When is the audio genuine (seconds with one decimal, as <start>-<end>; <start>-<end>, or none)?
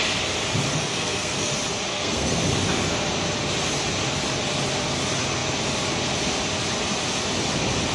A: 0.0-0.7; 1.5-1.9; 2.4-7.9